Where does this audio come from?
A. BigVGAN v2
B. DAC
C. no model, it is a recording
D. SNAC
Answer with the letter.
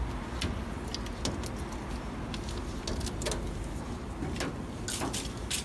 C